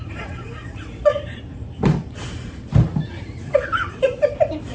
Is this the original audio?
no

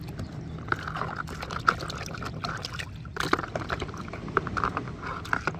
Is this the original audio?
yes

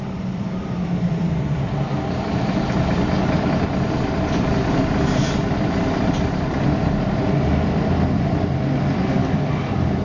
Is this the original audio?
no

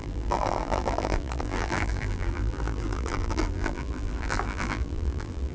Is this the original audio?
no